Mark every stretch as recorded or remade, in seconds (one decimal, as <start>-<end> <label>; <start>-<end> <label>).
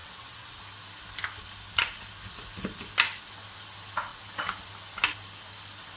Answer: 0.0-0.6 remade; 0.6-6.0 recorded